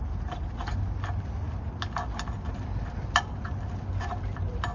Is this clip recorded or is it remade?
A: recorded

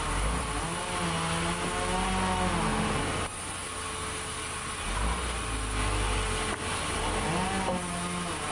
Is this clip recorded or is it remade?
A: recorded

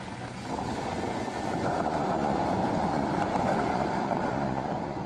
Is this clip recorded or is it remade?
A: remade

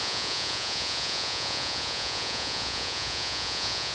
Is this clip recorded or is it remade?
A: remade